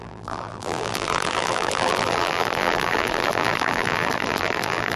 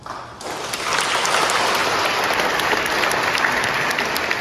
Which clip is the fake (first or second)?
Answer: first